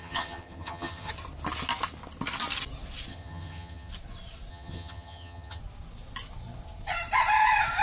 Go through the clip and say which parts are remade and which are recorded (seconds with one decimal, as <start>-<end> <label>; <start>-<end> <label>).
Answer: 0.0-1.1 remade; 1.1-3.1 recorded; 3.1-3.9 remade; 3.9-4.5 recorded; 4.5-5.6 remade; 5.6-7.8 recorded